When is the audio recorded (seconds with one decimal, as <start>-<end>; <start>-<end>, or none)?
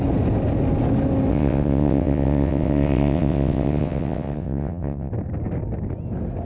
0.0-1.3; 5.1-6.4